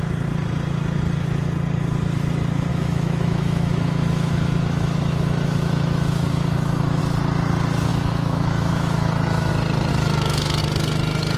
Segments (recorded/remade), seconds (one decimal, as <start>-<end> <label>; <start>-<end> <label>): 0.0-2.7 recorded; 2.7-7.0 remade; 7.0-7.9 recorded; 7.9-9.5 remade; 9.5-9.9 recorded; 9.9-10.6 remade; 10.6-11.4 recorded